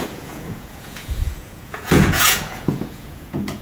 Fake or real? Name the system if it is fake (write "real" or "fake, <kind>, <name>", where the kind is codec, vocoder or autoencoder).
fake, vocoder, Vocos